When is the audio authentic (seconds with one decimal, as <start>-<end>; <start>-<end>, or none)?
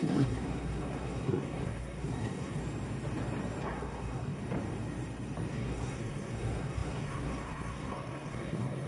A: 2.6-3.6; 4.4-5.5